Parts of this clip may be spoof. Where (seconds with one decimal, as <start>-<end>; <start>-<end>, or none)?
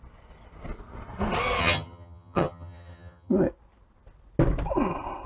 1.6-3.3